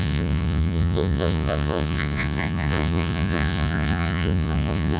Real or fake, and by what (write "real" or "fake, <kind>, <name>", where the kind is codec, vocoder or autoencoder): fake, vocoder, Vocos